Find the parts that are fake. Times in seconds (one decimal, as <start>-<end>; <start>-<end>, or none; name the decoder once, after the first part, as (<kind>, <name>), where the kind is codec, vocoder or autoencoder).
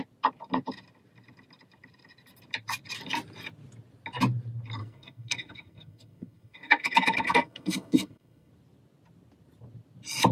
4.8-8.5 (codec, SNAC)